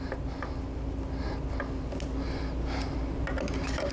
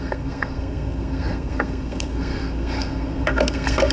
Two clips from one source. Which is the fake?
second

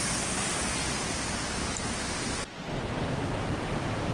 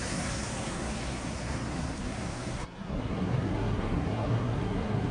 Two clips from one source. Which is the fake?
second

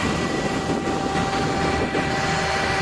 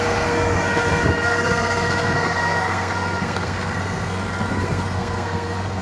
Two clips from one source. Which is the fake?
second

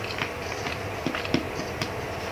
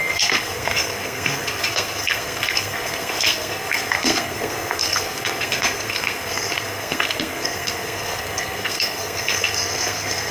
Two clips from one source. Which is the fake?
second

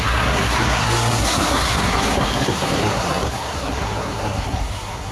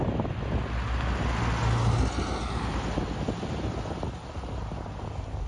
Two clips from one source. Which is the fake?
first